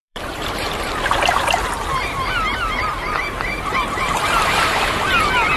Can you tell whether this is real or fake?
fake